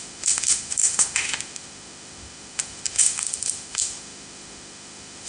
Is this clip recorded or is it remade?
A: remade